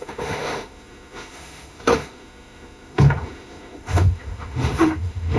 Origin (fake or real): fake